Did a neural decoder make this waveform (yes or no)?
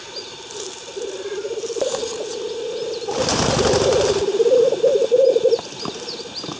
no